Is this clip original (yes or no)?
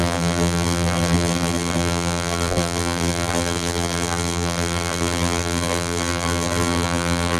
no